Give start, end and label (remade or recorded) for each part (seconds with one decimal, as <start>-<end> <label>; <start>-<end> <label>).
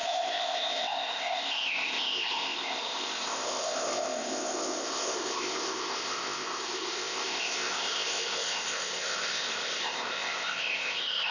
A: 0.0-11.3 remade